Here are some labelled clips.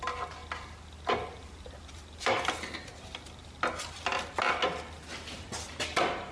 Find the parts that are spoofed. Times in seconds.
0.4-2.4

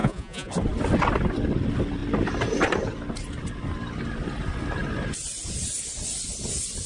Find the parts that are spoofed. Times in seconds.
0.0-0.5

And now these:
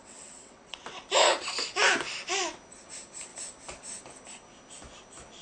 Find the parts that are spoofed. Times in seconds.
0.0-1.0